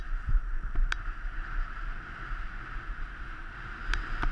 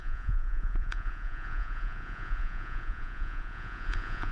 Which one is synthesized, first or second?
second